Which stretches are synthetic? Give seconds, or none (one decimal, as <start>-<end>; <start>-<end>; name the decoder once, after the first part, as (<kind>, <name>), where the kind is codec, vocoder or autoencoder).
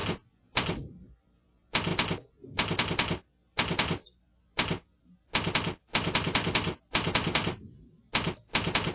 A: none